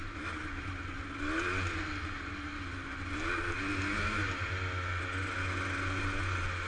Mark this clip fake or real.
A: real